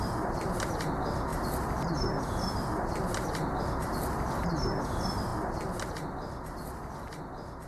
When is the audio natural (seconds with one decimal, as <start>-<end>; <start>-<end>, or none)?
5.3-5.9